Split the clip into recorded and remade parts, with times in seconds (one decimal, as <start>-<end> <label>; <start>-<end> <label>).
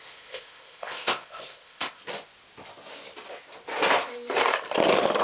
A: 0.0-2.0 remade; 2.0-5.2 recorded